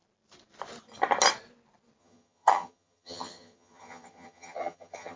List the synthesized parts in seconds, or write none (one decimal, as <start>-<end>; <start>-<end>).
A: 2.0-5.2

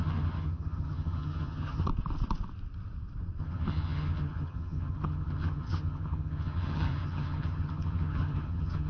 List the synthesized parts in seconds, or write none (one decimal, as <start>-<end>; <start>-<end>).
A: 0.0-1.9; 3.4-8.9

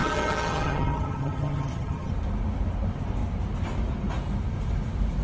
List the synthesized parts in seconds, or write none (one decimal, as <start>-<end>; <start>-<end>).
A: 0.0-2.1